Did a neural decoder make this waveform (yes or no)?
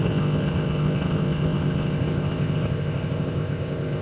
yes